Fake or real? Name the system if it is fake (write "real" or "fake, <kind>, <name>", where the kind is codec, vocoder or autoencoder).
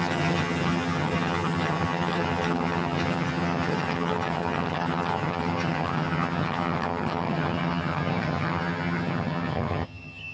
fake, vocoder, HiFi-GAN